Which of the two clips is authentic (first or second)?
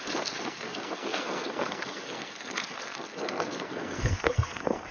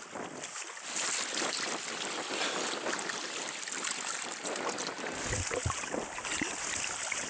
second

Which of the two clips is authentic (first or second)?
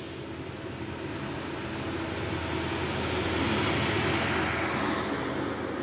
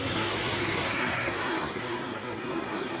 first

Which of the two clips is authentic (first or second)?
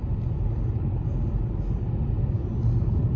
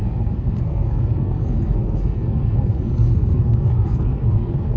first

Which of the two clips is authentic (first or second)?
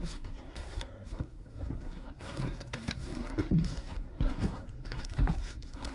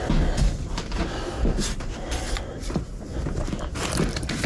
second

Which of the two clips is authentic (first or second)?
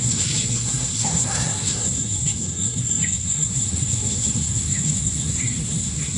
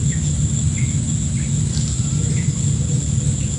second